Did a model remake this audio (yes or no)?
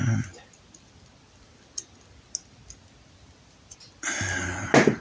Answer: no